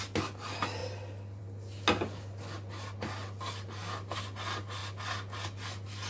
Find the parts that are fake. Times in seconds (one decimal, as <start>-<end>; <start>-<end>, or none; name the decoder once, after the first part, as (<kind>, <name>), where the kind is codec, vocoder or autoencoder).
none